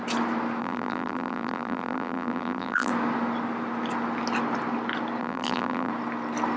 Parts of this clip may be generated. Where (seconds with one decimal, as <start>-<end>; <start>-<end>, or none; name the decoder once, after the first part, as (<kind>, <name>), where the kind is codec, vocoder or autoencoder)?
0.6-2.9 (vocoder, BigVGAN v2); 5.2-5.9